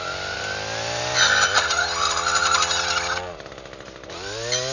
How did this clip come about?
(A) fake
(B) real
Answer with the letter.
B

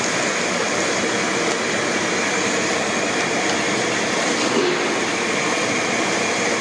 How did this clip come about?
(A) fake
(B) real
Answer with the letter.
B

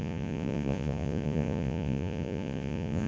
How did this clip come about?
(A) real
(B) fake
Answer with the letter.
B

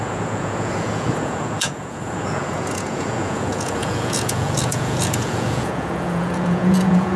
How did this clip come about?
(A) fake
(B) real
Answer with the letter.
A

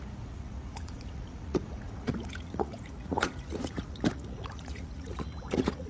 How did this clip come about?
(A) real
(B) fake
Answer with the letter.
B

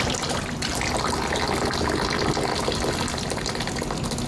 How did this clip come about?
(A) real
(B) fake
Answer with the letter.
A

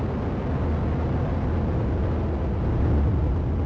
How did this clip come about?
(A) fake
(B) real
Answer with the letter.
B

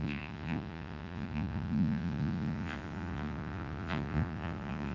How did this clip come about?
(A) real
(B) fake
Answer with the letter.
B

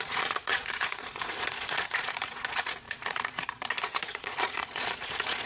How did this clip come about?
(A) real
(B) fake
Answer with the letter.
B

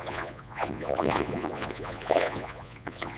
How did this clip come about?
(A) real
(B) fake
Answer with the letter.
B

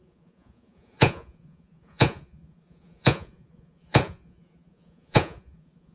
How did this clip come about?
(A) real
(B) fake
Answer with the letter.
B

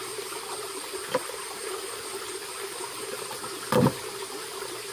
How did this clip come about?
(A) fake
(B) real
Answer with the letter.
B